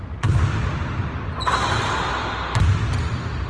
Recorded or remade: recorded